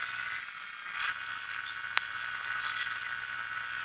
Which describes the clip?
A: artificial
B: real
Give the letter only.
B